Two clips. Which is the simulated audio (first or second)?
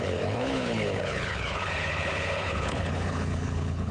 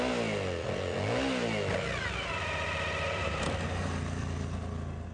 first